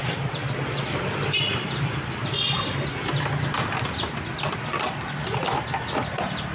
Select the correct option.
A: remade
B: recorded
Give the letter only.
B